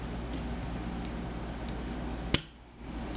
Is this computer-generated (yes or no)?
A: no